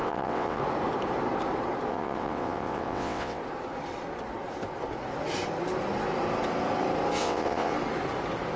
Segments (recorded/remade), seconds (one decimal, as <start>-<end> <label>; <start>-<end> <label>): 0.0-0.6 remade; 0.6-1.9 recorded; 1.9-3.4 remade; 3.4-7.2 recorded; 7.2-7.7 remade; 7.7-8.6 recorded